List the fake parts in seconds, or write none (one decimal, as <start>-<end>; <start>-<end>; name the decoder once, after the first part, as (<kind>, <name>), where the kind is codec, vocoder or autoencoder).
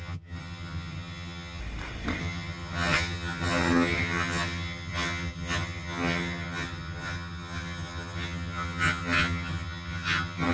0.0-1.6 (vocoder, HiFi-GAN); 2.2-10.5